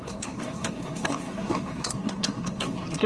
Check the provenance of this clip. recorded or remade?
remade